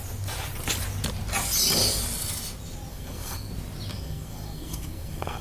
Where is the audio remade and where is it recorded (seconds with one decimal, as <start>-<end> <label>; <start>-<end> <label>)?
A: 0.0-2.9 recorded; 2.9-3.5 remade; 3.5-3.9 recorded; 3.9-5.4 remade